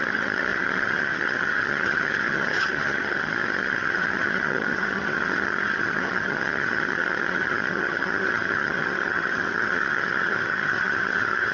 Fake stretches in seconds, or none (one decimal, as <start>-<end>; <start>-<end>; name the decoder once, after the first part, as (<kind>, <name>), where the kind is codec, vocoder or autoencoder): 0.0-11.5 (vocoder, HiFi-GAN)